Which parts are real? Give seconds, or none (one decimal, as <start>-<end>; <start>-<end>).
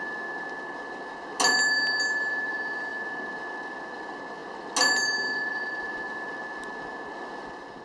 0.0-7.8